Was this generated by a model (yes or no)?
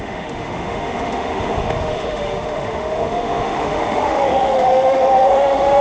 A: yes